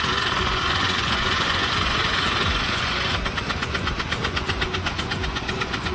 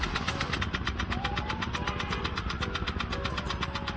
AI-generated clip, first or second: first